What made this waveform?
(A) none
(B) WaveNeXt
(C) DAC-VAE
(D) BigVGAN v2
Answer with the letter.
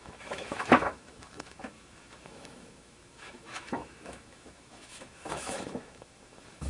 C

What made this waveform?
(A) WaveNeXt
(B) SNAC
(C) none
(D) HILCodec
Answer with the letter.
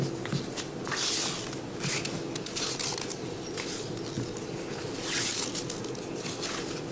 C